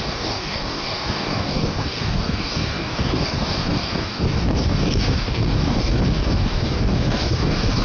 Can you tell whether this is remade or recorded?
remade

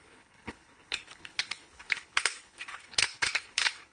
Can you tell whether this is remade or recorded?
remade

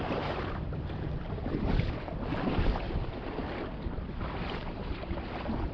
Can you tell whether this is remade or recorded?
remade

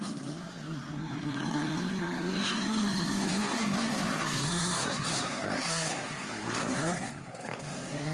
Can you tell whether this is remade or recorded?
remade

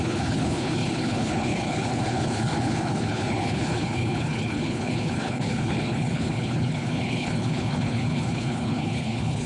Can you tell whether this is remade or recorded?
remade